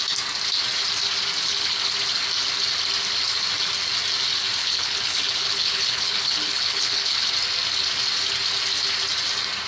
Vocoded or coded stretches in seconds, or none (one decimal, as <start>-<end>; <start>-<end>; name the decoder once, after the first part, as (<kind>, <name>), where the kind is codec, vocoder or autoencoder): 1.4-1.9 (codec, HILCodec); 4.6-7.3